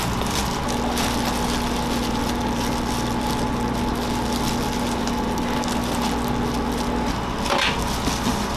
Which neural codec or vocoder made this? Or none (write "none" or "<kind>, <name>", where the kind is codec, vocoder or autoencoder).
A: none